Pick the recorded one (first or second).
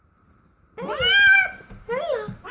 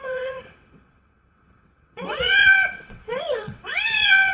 first